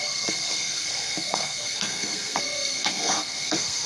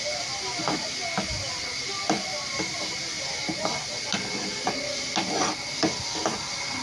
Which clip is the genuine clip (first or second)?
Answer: second